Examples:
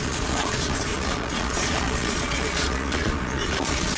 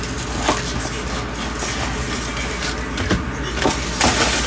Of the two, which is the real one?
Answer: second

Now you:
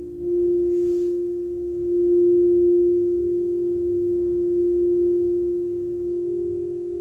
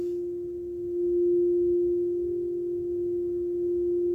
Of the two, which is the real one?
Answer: second